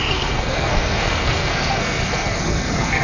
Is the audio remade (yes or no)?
yes